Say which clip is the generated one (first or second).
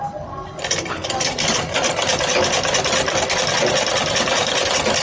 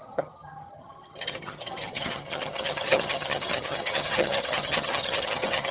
second